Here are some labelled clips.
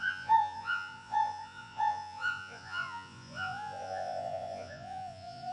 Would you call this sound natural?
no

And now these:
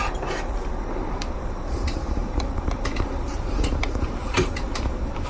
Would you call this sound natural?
no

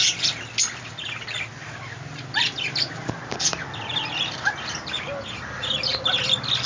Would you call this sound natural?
yes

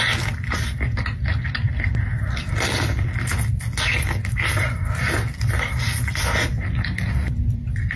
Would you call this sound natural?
yes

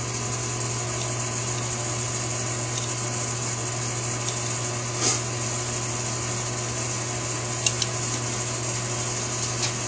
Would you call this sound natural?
yes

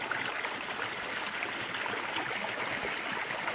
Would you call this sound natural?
yes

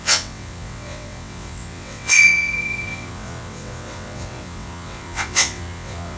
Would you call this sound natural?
no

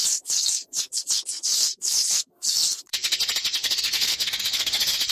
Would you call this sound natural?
no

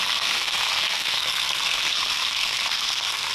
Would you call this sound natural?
no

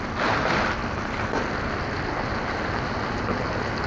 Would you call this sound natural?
yes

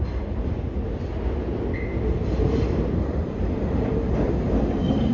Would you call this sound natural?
yes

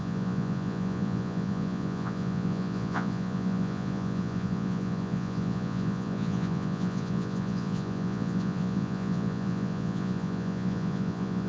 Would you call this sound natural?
no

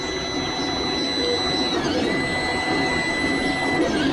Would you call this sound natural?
yes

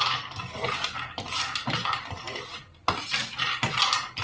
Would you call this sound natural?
yes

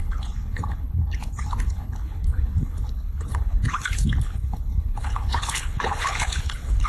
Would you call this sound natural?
no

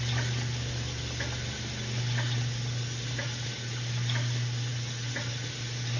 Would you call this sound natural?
yes